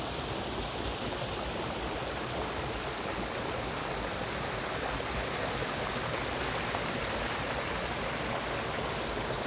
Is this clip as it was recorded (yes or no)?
yes